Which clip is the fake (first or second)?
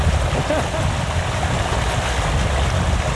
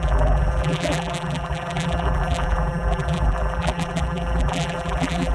second